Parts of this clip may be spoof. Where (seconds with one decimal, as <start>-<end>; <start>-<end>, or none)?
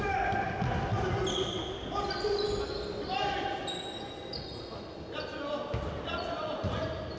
6.1-6.8